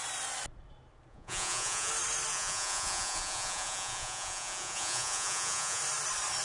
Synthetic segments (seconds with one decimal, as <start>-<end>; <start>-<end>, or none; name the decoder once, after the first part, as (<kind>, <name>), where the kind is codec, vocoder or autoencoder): 1.1-1.9 (vocoder, Vocos); 2.3-5.8